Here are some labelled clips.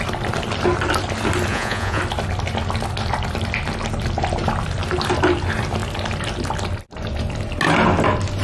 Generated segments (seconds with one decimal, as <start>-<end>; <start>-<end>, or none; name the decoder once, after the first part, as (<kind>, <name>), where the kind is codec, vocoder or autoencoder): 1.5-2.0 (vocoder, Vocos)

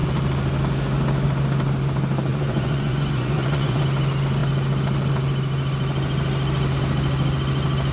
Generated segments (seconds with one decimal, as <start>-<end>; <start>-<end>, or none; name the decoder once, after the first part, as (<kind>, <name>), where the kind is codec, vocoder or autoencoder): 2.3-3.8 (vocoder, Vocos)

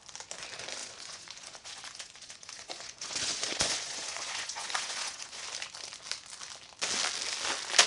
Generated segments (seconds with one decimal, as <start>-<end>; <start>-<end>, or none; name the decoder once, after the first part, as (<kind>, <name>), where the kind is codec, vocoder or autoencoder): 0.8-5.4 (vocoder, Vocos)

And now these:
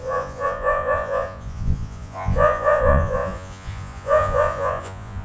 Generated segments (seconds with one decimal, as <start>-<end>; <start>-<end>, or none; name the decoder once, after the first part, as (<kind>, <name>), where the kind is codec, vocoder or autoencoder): 0.0-5.2 (vocoder, Vocos)

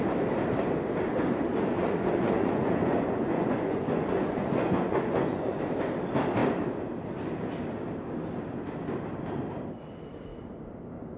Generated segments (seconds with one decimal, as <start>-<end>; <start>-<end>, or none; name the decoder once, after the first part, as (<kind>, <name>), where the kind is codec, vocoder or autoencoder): 1.5-5.6 (vocoder, Vocos)